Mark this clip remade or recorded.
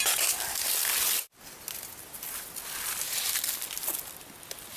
recorded